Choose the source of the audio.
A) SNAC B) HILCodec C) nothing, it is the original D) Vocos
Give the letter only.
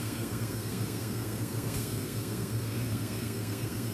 A